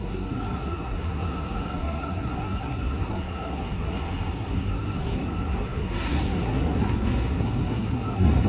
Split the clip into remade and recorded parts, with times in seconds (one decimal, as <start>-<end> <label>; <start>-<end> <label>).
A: 0.0-8.5 remade

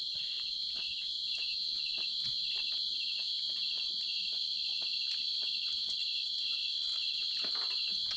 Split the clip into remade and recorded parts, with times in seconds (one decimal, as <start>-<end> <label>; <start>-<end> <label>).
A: 0.0-8.2 recorded

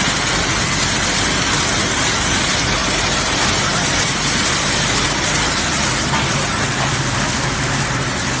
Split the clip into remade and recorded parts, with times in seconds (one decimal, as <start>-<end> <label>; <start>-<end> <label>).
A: 0.0-8.4 recorded

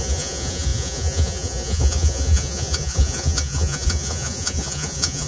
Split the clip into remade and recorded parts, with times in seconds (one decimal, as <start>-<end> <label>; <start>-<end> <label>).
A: 0.0-5.3 remade

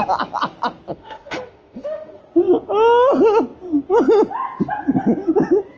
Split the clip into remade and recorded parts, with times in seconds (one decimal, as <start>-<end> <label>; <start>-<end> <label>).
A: 0.0-0.9 recorded; 0.9-2.2 remade; 2.2-5.8 recorded

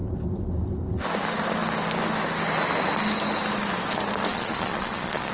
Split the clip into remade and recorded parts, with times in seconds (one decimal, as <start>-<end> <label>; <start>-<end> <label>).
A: 0.0-4.3 recorded; 4.3-5.3 remade

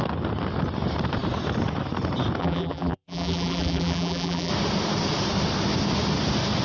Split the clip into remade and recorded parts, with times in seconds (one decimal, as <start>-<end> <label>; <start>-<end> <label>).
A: 0.0-2.4 recorded; 2.4-4.5 remade; 4.5-6.6 recorded

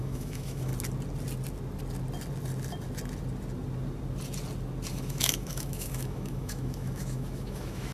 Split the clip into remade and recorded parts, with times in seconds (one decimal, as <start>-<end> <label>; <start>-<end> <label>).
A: 0.0-0.7 remade; 0.7-4.9 recorded; 4.9-7.9 remade